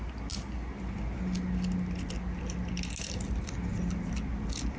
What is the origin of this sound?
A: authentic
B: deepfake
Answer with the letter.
A